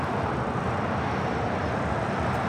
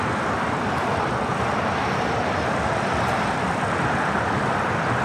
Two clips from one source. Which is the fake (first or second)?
second